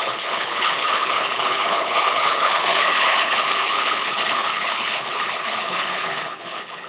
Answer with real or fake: fake